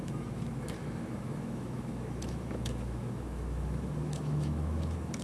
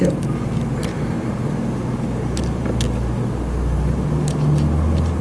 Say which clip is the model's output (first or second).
first